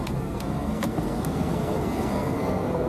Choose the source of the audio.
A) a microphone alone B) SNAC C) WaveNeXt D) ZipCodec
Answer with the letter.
B